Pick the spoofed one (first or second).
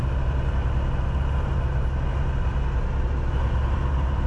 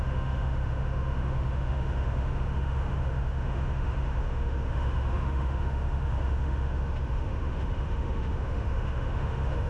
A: second